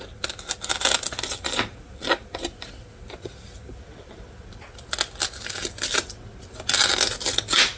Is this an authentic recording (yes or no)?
yes